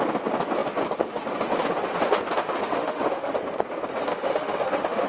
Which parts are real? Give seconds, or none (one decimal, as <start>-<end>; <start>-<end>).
0.0-2.6; 3.3-4.1